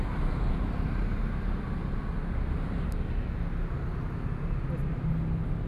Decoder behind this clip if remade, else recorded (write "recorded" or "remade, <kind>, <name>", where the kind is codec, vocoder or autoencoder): recorded